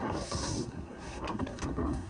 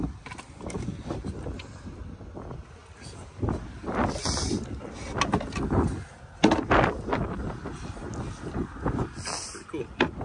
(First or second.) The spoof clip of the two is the first